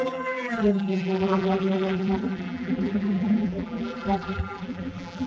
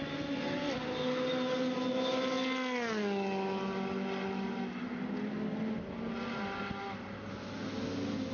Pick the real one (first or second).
second